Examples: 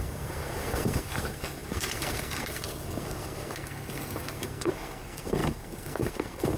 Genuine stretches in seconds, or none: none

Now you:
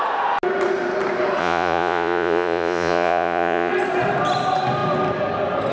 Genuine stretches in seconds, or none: 0.0-1.4; 3.7-5.7